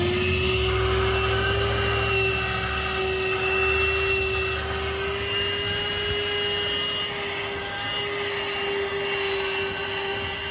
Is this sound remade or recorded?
recorded